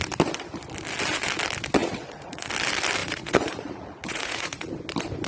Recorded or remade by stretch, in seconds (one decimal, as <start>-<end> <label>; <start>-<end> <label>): 0.0-1.8 recorded; 1.8-2.5 remade; 2.5-3.0 recorded; 3.0-4.7 remade; 4.7-5.3 recorded